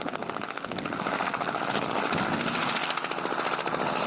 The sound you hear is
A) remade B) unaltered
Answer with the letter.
B